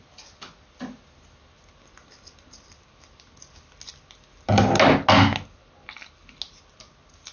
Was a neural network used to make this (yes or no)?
no